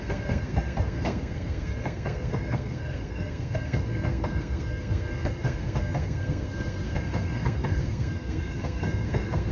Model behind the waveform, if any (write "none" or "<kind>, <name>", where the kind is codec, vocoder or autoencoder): codec, SNAC